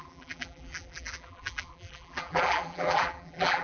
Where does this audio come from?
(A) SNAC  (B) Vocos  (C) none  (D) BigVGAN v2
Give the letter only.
D